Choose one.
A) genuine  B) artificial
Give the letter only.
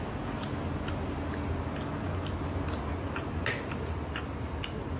A